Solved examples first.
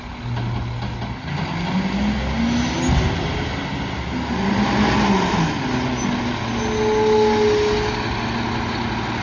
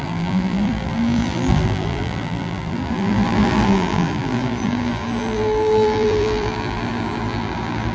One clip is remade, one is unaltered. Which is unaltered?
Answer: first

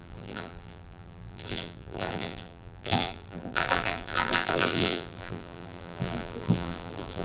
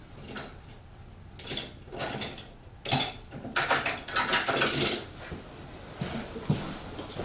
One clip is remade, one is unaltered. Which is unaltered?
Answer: second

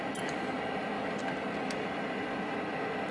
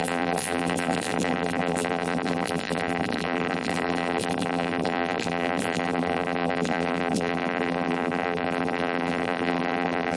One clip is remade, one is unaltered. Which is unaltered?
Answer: first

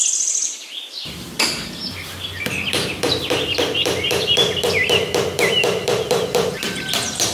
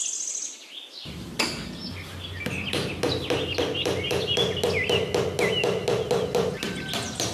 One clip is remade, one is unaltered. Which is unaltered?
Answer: second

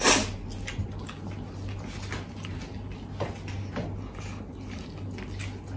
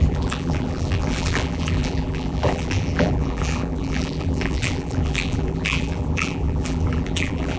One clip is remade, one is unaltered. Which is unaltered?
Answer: first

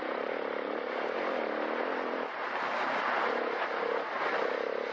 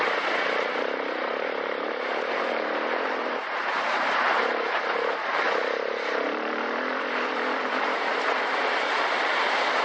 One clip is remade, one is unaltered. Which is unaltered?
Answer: first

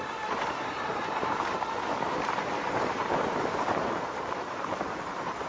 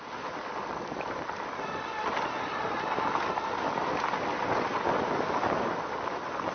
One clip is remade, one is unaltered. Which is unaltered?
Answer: second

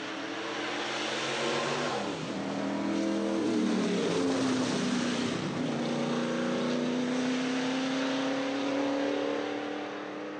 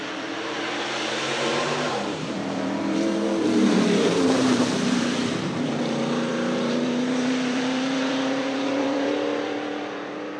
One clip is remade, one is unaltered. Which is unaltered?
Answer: first